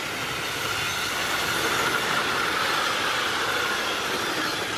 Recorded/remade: recorded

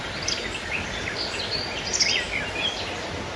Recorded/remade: recorded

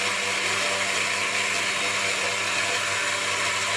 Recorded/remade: recorded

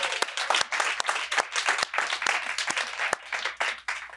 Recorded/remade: recorded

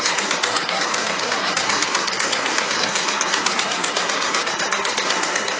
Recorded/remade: remade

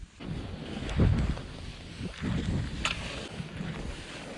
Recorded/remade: recorded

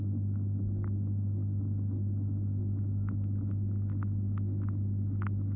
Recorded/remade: recorded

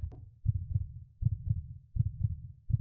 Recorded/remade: recorded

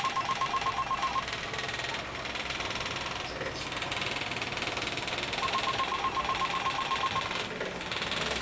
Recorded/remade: recorded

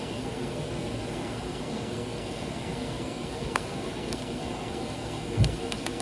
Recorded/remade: remade